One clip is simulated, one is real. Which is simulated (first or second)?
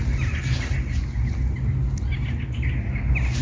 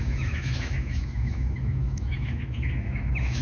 second